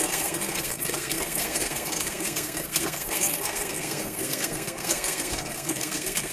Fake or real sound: fake